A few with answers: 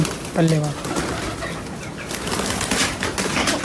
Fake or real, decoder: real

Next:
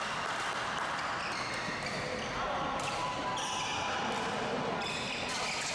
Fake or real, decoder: real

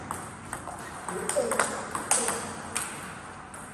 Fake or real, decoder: real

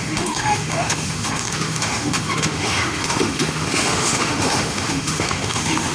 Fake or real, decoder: fake, autoencoder, DAC-VAE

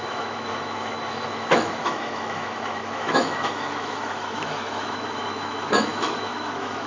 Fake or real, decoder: fake, autoencoder, DAC-VAE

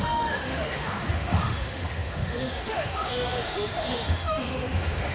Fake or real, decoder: fake, autoencoder, DAC-VAE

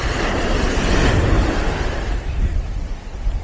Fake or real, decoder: real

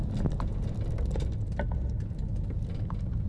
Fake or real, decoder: real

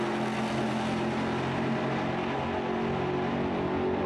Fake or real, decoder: real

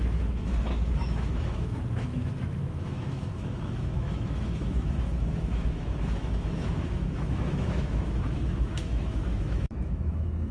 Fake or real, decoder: fake, autoencoder, DAC-VAE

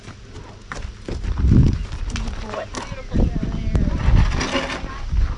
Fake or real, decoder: real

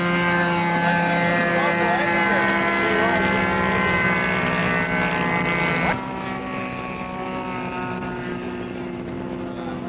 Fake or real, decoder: real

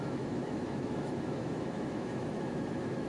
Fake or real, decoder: fake, autoencoder, DAC-VAE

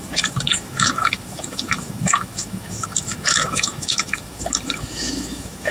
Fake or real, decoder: fake, autoencoder, DAC-VAE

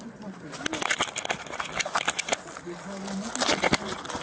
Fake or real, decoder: real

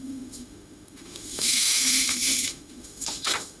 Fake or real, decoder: fake, autoencoder, DAC-VAE